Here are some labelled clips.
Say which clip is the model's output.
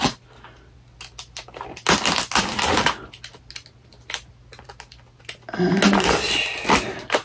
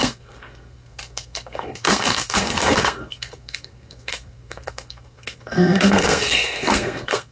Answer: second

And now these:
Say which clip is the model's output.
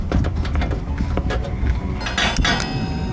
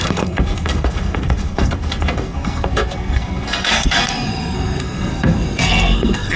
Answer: second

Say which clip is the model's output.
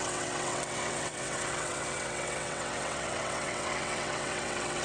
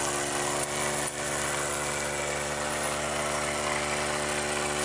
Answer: first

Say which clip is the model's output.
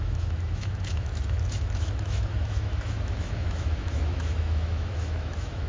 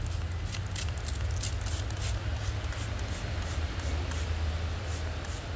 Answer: first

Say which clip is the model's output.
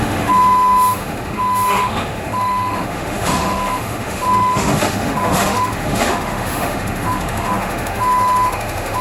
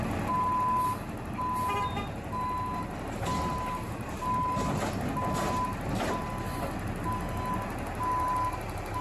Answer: first